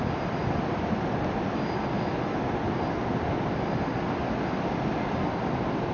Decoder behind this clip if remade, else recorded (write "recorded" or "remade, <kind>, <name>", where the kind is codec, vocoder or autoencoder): recorded